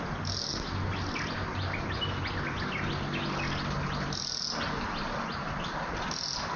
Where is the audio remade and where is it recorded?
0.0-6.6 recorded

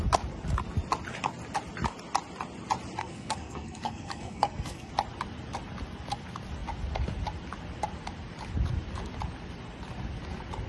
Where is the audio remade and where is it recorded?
0.0-3.0 recorded; 3.0-4.9 remade; 4.9-10.7 recorded

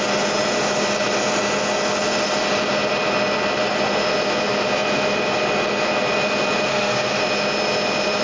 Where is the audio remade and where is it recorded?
0.0-6.7 recorded; 6.7-7.2 remade; 7.2-8.2 recorded

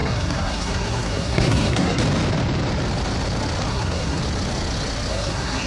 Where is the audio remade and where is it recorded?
0.0-2.0 remade; 2.0-3.7 recorded; 3.7-4.2 remade; 4.2-5.1 recorded; 5.1-5.7 remade

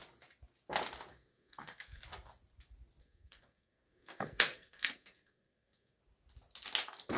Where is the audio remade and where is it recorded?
0.0-1.1 recorded; 1.1-2.0 remade; 2.0-3.0 recorded; 3.0-6.0 remade; 6.0-7.2 recorded

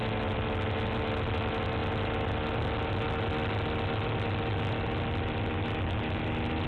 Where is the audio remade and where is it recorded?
0.0-6.7 recorded

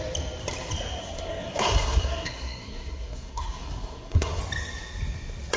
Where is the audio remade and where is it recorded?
0.0-1.0 recorded; 1.0-4.4 remade; 4.4-5.6 recorded

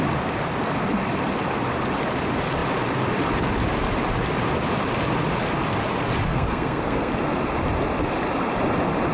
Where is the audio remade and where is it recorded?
0.0-6.3 recorded; 6.3-7.1 remade; 7.1-9.1 recorded